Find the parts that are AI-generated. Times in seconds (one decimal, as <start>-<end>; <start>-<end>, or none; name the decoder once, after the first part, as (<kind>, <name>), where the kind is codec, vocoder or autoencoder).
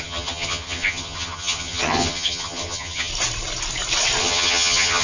0.0-3.1 (vocoder, HiFi-GAN); 4.2-5.0